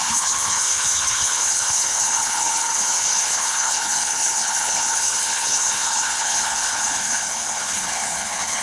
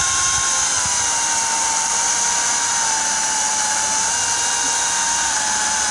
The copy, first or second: first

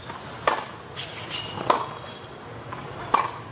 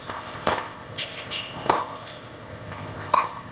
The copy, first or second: second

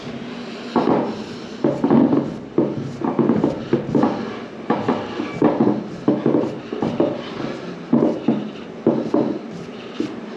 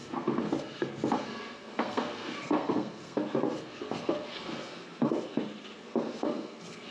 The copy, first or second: second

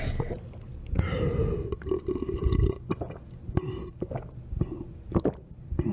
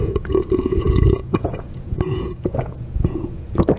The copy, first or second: second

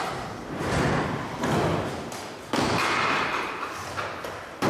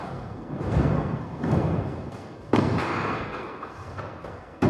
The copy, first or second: second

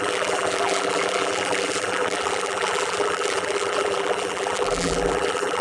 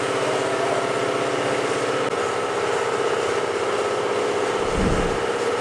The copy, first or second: first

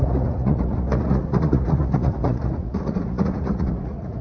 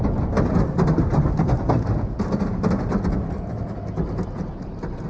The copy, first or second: first